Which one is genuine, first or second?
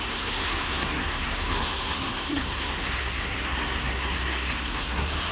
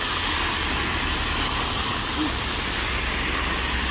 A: second